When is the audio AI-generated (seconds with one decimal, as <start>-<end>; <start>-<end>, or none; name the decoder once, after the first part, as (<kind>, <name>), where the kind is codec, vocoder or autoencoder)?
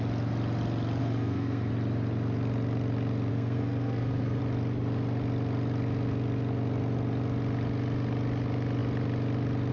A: 1.0-1.7 (codec, SNAC); 3.3-4.4